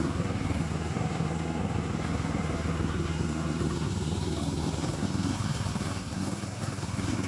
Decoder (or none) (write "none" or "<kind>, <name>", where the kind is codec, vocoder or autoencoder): codec, SNAC